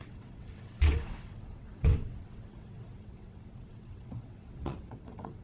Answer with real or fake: fake